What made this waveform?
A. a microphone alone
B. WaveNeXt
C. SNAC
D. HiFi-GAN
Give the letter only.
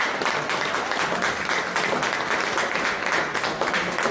A